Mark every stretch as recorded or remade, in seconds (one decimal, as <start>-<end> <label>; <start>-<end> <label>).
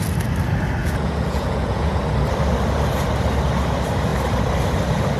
0.0-0.8 recorded; 0.8-2.0 remade; 2.0-5.2 recorded